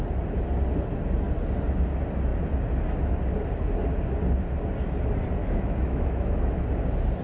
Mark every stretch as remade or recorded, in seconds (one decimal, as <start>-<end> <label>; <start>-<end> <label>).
0.0-5.4 recorded; 5.4-6.6 remade; 6.6-7.2 recorded